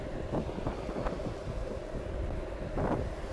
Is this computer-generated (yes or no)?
no